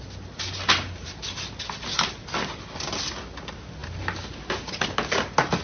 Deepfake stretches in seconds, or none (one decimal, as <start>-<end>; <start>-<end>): none